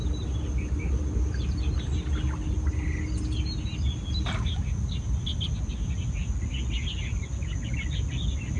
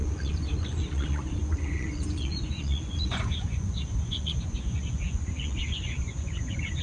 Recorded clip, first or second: first